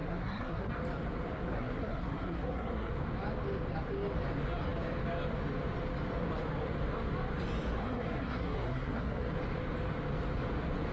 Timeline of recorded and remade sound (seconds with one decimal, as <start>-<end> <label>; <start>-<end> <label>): 0.0-0.7 remade; 0.7-1.5 recorded; 1.5-2.9 remade; 2.9-7.8 recorded; 7.8-9.3 remade; 9.3-10.9 recorded